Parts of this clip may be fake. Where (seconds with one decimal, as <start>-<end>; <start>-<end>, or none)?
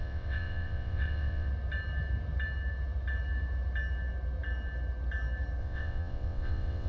0.0-1.5; 5.6-6.9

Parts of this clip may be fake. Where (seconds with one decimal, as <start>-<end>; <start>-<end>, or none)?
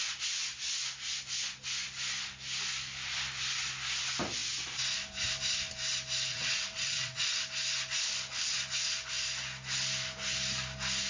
6.3-7.3